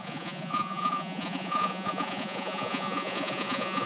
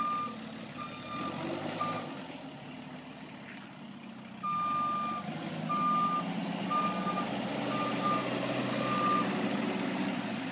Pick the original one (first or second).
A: second